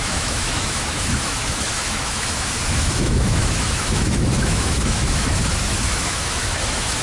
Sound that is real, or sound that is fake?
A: fake